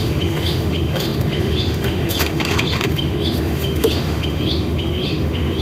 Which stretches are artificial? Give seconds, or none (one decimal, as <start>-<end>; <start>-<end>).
0.0-5.6